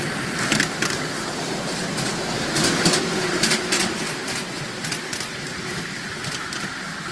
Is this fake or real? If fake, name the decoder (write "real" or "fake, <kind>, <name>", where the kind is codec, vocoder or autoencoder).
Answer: real